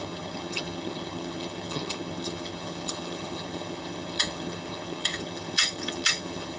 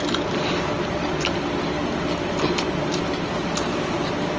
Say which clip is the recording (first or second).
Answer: second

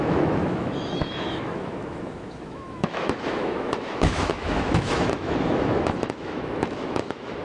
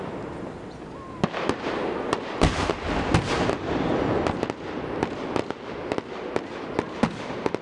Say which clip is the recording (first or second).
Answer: second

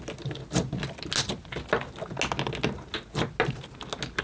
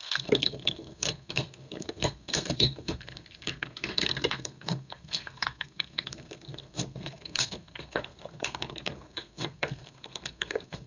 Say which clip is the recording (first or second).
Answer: first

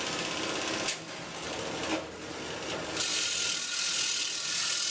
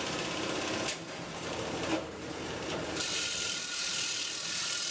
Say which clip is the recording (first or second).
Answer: first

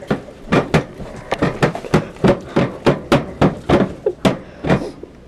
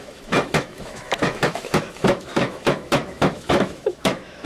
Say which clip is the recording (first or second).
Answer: first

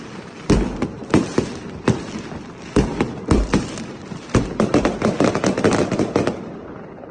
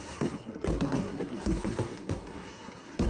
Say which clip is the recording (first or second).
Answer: first